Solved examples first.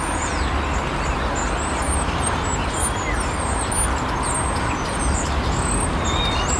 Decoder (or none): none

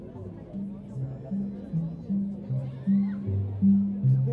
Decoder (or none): none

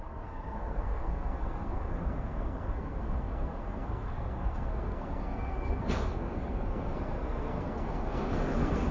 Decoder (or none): codec, SNAC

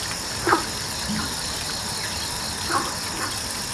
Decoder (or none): none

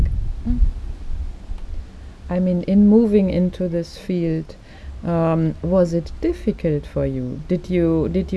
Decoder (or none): none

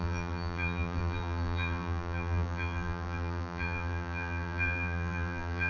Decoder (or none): vocoder, BigVGAN v2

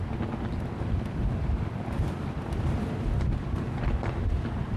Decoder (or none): none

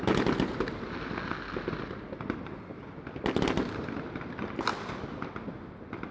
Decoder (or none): none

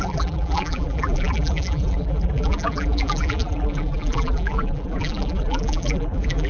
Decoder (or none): vocoder, BigVGAN v2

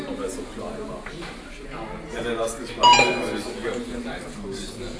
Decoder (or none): none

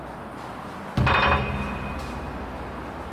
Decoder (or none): none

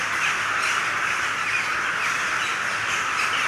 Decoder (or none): none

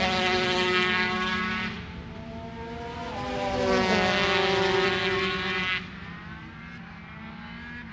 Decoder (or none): none